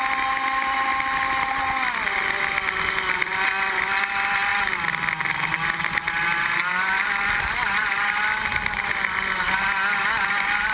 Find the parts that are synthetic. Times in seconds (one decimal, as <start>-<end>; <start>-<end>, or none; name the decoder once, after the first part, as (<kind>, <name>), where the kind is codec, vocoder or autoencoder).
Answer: none